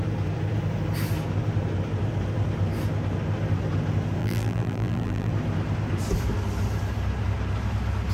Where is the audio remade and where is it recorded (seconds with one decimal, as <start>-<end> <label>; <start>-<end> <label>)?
0.0-4.2 recorded; 4.2-5.3 remade; 5.3-8.1 recorded